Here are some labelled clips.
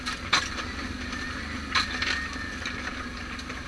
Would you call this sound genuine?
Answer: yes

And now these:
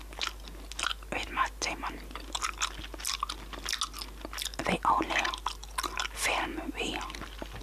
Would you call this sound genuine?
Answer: yes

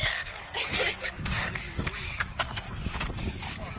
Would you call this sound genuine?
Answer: no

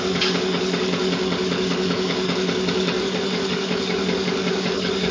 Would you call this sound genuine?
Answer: no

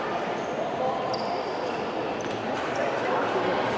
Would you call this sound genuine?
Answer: yes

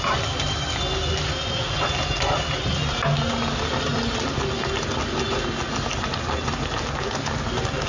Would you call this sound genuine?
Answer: yes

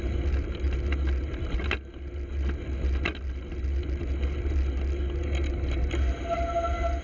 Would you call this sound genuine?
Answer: yes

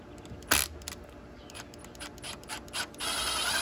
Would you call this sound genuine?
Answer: yes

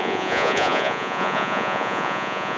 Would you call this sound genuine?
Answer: no